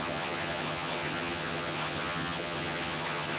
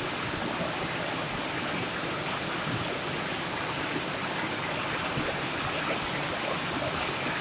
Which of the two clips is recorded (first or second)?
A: second